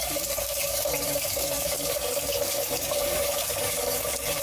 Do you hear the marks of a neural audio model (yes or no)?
yes